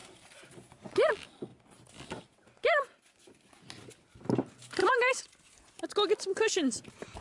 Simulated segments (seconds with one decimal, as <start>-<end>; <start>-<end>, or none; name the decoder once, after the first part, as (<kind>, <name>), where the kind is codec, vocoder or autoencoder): 0.0-1.1 (vocoder, BigVGAN v2); 1.5-3.4; 4.8-5.7